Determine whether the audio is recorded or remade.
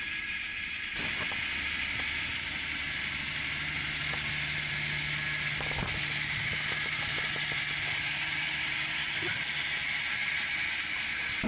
recorded